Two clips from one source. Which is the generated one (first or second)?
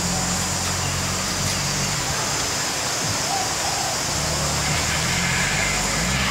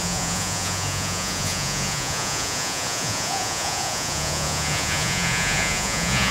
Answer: second